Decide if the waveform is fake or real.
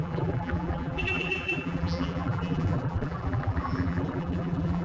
fake